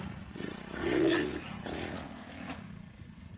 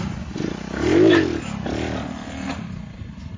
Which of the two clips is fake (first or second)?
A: first